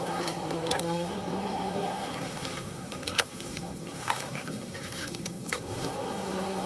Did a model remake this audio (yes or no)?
yes